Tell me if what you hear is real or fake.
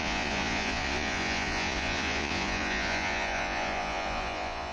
fake